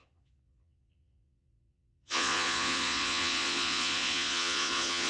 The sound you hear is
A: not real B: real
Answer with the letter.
A